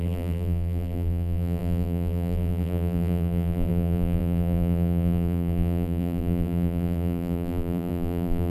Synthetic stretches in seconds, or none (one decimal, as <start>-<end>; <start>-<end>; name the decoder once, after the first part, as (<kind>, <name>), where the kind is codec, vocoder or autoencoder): 0.0-8.5 (vocoder, BigVGAN v2)